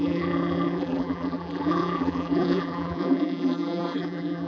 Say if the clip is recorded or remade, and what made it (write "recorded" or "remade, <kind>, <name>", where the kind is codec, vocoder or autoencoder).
remade, vocoder, BigVGAN v2